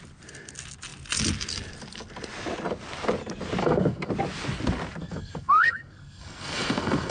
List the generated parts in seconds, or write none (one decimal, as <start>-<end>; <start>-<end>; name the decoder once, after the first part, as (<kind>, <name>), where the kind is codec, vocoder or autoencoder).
3.6-4.1 (codec, SNAC); 5.0-7.1